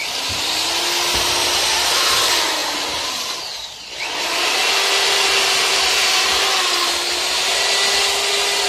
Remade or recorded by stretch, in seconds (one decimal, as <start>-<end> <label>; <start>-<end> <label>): 0.0-8.7 recorded